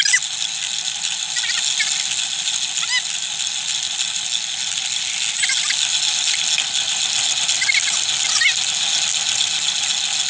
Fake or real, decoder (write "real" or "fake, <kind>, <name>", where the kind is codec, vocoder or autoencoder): real